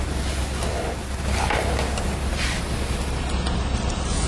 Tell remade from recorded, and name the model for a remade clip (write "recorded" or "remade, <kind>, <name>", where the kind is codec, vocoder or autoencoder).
recorded